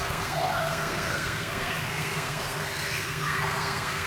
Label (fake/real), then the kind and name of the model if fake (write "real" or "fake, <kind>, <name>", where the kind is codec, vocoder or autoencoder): fake, codec, SNAC